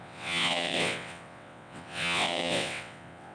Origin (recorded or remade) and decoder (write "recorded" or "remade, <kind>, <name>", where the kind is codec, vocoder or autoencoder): remade, vocoder, WaveNeXt